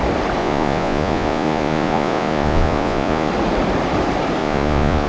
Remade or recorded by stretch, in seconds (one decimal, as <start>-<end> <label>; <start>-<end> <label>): 0.0-0.4 recorded; 0.4-3.3 remade; 3.3-4.4 recorded; 4.4-5.1 remade